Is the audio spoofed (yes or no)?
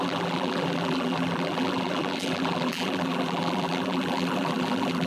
yes